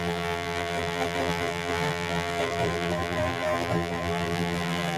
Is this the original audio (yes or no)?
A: no